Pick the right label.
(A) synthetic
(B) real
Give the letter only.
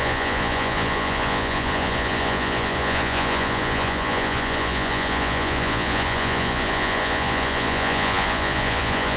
A